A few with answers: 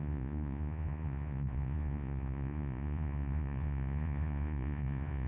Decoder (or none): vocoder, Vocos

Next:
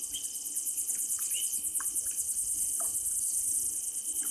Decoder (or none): none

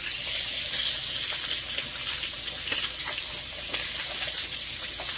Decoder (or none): none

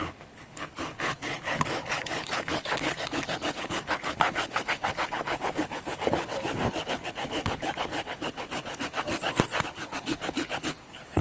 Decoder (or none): codec, HILCodec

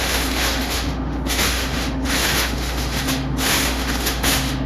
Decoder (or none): autoencoder, DAC-VAE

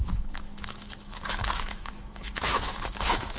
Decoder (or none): autoencoder, DAC-VAE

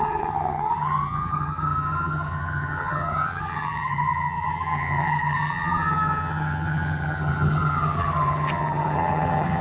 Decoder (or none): vocoder, HiFi-GAN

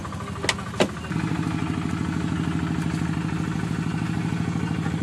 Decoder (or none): none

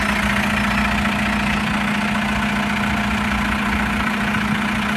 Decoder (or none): none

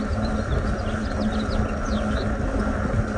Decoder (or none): none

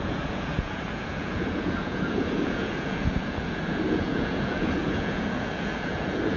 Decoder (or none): vocoder, Vocos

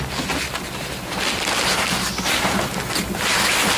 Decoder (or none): none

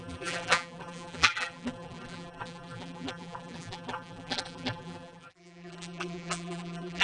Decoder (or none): vocoder, BigVGAN v2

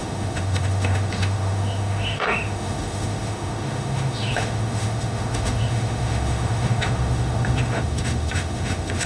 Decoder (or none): autoencoder, DAC-VAE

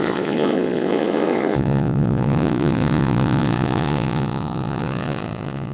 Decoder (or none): vocoder, Vocos